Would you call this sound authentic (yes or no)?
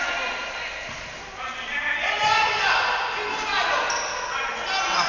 yes